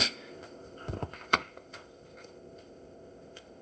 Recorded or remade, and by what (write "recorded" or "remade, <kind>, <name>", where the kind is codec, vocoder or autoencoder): remade, codec, ZipCodec